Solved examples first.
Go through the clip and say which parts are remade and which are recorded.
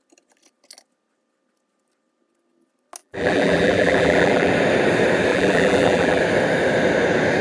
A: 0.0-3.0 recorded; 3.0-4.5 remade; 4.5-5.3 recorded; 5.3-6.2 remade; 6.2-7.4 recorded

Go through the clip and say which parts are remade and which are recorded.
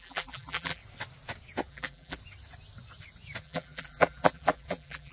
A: 0.0-0.8 remade; 0.8-1.7 recorded; 1.7-2.2 remade; 2.2-3.4 recorded; 3.4-5.1 remade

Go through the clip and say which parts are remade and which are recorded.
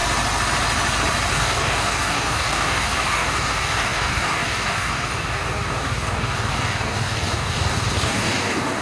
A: 0.0-1.3 recorded; 1.3-8.8 remade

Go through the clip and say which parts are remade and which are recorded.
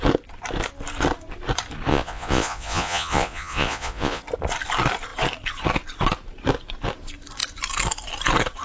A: 0.0-1.9 recorded; 1.9-4.2 remade; 4.2-8.6 recorded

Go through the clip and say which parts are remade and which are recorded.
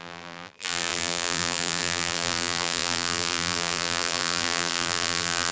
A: 0.0-5.5 remade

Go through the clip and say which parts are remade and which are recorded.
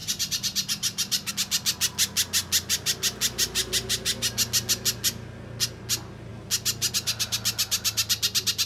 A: 0.0-1.3 remade; 1.3-8.7 recorded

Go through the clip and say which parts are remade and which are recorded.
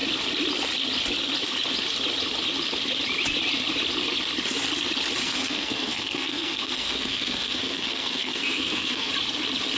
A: 0.0-5.2 recorded; 5.2-9.1 remade; 9.1-9.8 recorded